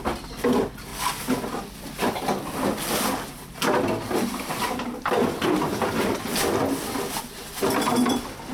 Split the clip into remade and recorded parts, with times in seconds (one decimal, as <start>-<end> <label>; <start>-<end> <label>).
0.0-8.5 recorded